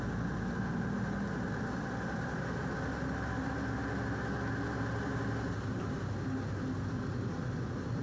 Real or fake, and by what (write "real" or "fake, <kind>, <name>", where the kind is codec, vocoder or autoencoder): real